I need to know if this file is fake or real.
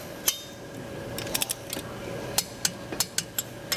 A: real